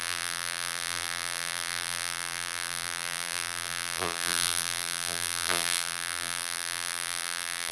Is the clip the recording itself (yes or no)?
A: no